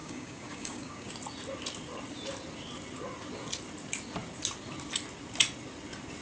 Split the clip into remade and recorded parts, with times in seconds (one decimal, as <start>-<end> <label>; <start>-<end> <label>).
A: 0.0-1.1 remade; 1.1-6.2 recorded